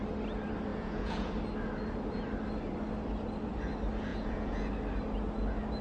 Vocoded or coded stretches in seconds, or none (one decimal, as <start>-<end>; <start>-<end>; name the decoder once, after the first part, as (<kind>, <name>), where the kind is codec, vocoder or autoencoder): 0.7-1.3 (vocoder, Vocos); 4.1-4.7